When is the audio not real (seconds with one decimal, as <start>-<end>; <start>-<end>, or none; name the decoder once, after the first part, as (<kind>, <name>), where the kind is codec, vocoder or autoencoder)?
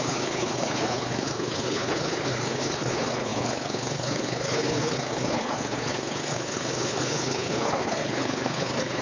0.0-9.0 (codec, HILCodec)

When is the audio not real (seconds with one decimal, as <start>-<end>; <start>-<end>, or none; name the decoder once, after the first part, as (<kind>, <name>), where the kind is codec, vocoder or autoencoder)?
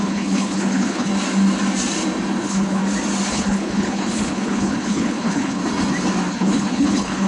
0.0-1.1 (codec, HILCodec); 2.4-2.8; 3.3-5.6; 6.3-7.3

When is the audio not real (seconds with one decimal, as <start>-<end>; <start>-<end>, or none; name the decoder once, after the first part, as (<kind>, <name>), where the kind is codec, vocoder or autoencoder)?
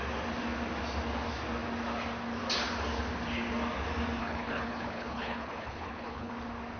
4.2-6.3 (codec, HILCodec)